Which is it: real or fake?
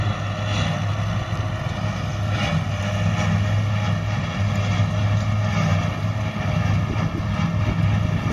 real